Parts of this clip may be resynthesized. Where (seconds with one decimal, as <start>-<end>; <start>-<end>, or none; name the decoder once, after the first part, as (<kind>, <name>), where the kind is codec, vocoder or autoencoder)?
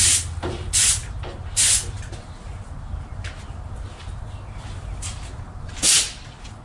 none